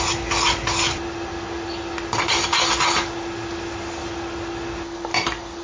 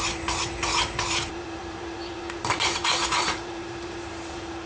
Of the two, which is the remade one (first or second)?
second